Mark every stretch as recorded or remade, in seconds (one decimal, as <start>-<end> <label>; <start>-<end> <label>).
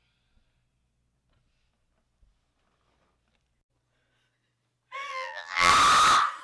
0.0-5.1 recorded; 5.1-5.7 remade; 5.7-6.4 recorded